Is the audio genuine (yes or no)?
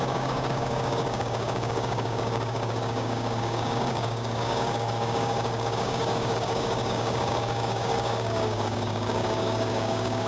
no